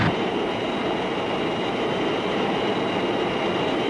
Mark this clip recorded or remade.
remade